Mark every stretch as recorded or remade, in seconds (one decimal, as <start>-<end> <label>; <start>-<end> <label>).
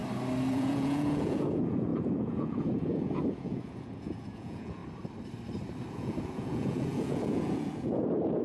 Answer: 0.0-0.5 recorded; 0.5-4.8 remade; 4.8-5.9 recorded; 5.9-8.4 remade